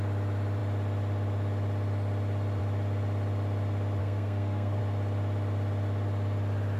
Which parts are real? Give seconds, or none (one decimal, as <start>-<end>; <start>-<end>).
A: 0.0-4.0; 4.8-6.8